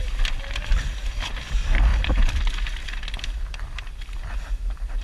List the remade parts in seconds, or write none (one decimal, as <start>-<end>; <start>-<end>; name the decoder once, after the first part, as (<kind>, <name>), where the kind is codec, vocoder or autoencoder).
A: none